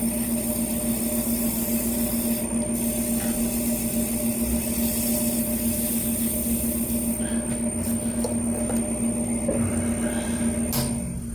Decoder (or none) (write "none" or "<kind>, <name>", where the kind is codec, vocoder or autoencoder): none